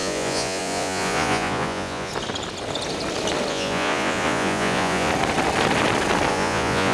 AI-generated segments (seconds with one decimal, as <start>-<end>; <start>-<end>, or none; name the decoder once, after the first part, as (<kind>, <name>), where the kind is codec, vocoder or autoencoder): 0.0-2.1 (vocoder, Vocos); 3.5-5.1; 6.3-6.9